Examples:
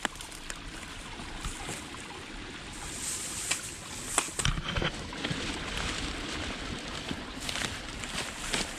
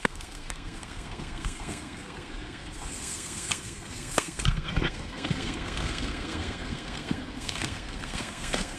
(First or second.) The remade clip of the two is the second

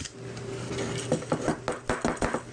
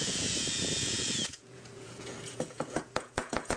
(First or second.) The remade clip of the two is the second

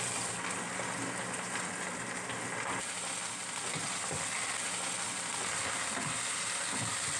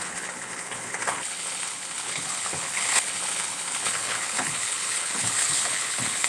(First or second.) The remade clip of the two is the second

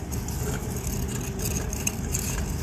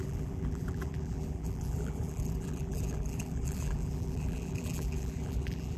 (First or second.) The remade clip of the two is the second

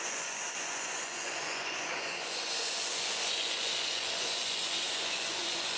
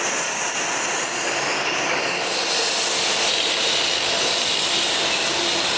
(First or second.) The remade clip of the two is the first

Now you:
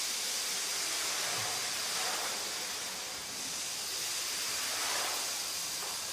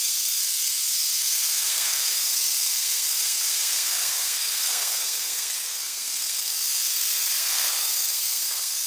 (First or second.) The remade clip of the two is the second